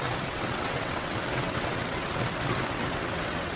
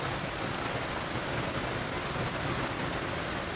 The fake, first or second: first